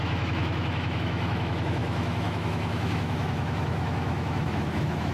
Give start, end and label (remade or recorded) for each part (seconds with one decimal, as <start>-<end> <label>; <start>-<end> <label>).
0.0-5.1 remade